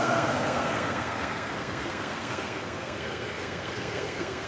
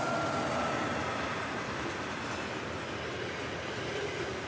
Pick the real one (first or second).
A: second